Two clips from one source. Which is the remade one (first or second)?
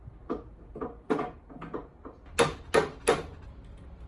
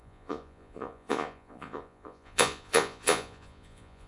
second